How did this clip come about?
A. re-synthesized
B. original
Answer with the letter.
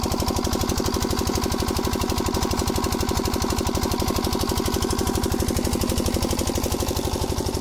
B